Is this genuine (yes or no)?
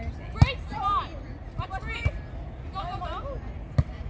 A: yes